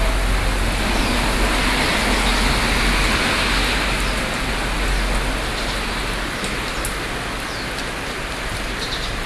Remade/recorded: recorded